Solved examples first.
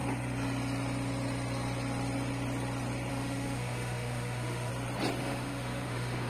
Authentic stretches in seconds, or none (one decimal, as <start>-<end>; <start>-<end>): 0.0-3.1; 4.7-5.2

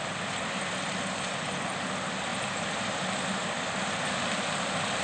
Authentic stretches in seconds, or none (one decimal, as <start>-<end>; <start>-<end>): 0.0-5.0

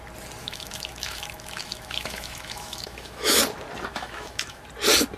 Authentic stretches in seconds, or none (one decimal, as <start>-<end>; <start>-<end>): 0.0-0.4; 3.4-3.9; 4.6-5.2

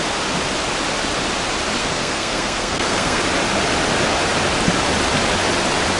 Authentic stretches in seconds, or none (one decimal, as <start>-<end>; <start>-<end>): 0.0-1.8; 3.2-6.0

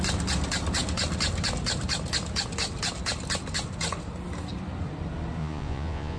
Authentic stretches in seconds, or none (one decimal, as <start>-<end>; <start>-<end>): 0.0-5.4

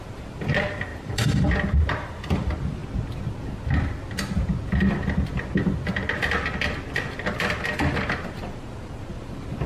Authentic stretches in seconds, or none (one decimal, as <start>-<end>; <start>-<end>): 2.8-7.3

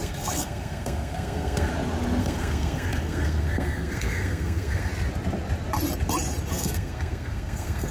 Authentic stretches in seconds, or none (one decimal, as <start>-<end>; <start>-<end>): 1.7-2.2; 4.9-6.5